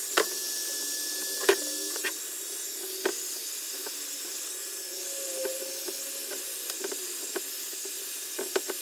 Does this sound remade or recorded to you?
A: recorded